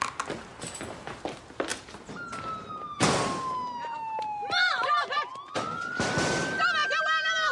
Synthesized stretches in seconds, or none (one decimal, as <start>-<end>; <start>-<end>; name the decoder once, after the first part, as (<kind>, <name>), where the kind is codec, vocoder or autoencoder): none